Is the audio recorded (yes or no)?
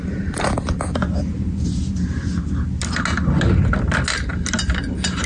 yes